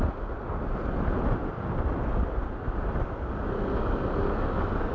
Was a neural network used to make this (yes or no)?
no